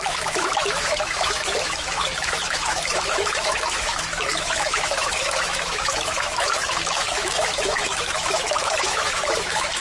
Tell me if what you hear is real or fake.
fake